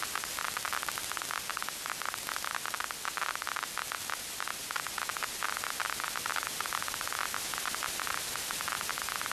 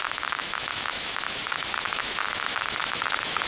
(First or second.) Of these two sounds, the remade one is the second